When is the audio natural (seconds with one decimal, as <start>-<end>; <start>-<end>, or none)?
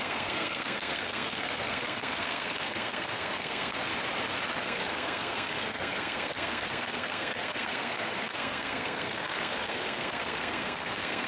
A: 3.9-4.6